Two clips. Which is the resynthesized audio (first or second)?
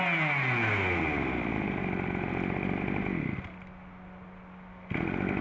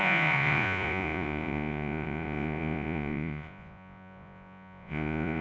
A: second